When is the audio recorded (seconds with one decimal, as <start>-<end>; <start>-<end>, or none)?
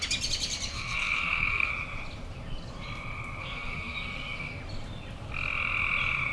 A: 0.0-0.7; 1.7-3.4; 4.6-6.3